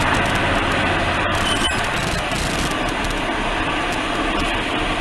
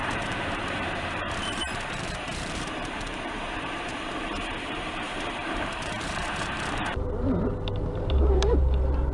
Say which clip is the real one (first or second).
first